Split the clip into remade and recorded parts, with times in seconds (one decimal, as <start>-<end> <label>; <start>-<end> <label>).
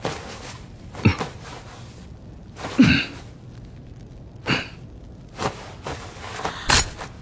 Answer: 0.0-7.2 recorded